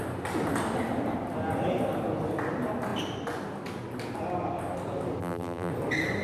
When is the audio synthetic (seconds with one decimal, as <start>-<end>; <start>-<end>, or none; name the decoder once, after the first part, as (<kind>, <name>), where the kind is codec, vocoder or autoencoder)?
5.2-5.7 (vocoder, BigVGAN v2)